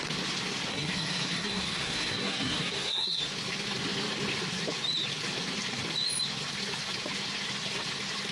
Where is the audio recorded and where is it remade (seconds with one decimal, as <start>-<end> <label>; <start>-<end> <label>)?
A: 0.0-0.7 recorded; 0.7-3.2 remade; 3.2-8.3 recorded